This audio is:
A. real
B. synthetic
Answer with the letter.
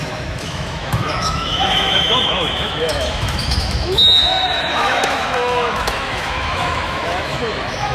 B